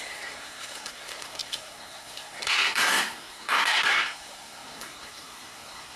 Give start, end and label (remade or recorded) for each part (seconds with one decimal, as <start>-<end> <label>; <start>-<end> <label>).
0.0-6.0 remade